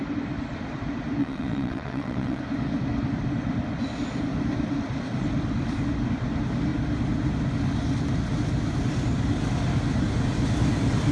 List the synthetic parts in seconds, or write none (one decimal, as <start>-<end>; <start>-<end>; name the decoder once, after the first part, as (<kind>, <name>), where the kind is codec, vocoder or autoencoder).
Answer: 1.2-2.4 (vocoder, WaveNeXt)